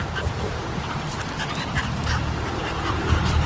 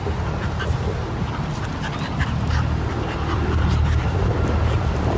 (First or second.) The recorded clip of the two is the second